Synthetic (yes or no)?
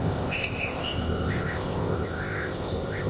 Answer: yes